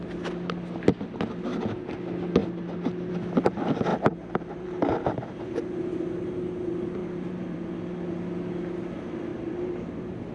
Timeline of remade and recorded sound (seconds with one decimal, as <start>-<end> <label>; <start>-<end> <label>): 0.0-3.9 recorded; 3.9-5.8 remade; 5.8-7.0 recorded; 7.0-7.7 remade; 7.7-9.3 recorded; 9.3-10.3 remade